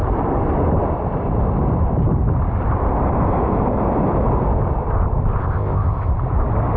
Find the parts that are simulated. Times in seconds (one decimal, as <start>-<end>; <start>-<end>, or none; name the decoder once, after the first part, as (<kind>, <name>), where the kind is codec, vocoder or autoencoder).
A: 5.4-6.1 (codec, ZipCodec)